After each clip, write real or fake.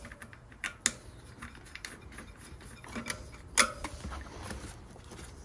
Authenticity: real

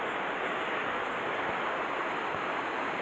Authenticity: real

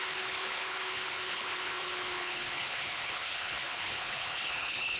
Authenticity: fake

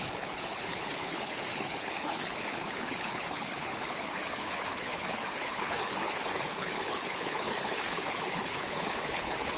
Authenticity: fake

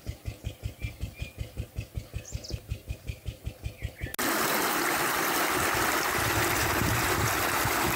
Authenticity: real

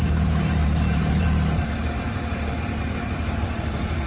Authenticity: fake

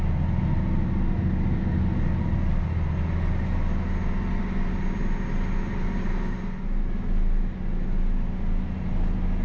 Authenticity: real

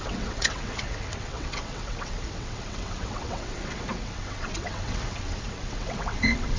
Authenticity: fake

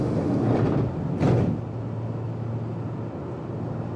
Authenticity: real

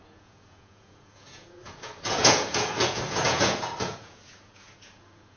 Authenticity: fake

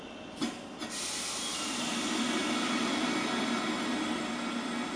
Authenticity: real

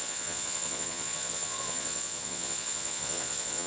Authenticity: fake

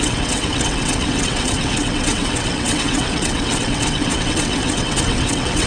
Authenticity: fake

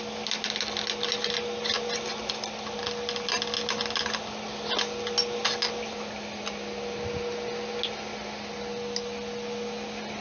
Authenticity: real